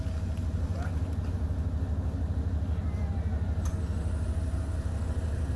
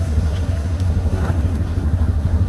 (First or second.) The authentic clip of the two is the first